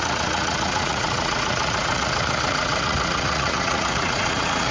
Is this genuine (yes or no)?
no